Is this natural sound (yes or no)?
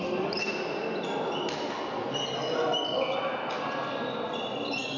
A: yes